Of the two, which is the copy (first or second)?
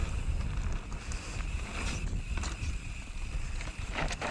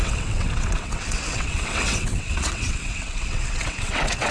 second